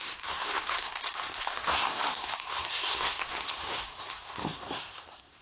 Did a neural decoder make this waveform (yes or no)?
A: yes